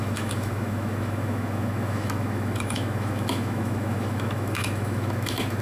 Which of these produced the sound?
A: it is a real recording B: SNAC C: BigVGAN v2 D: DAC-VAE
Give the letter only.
D